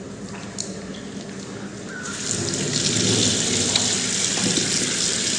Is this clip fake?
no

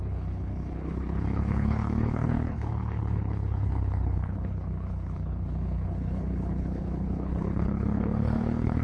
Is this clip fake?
yes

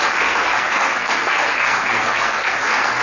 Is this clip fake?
yes